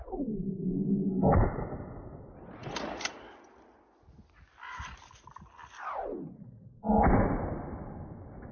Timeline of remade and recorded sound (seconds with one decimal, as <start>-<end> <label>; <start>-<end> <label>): 0.0-2.6 recorded; 2.6-3.5 remade; 3.5-8.5 recorded